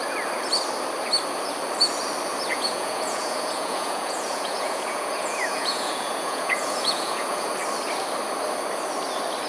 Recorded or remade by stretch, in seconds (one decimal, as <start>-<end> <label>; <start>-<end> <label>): 0.0-2.5 recorded; 2.5-7.5 remade; 7.5-9.5 recorded